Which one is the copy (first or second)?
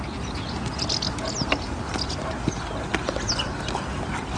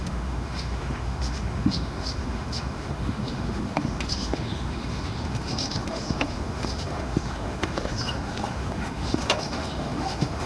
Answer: second